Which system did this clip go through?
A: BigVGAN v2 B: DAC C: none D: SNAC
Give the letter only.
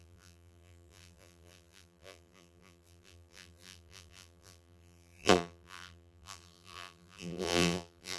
A